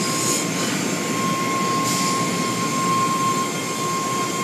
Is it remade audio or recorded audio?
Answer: recorded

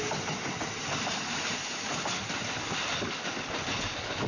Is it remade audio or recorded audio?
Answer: recorded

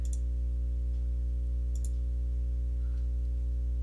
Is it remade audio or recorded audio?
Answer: recorded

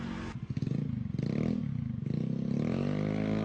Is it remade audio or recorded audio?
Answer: recorded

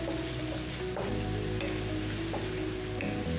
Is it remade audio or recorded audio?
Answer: recorded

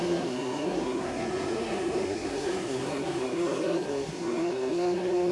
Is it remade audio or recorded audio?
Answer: remade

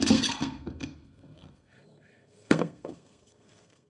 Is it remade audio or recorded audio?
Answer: remade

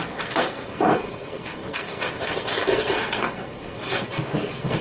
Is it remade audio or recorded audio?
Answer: remade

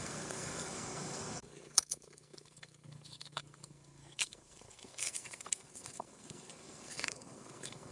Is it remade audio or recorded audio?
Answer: remade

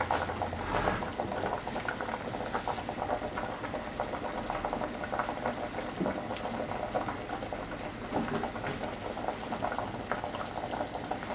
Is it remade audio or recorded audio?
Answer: recorded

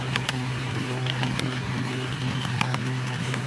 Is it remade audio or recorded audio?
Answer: remade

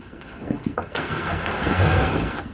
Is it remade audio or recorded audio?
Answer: remade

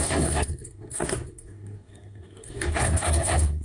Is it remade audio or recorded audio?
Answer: remade